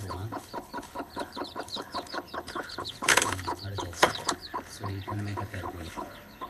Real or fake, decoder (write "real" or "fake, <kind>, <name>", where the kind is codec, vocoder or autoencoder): fake, codec, HILCodec